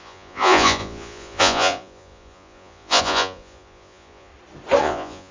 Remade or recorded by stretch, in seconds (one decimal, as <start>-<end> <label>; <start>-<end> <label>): 0.0-4.3 remade; 4.3-4.8 recorded; 4.8-5.3 remade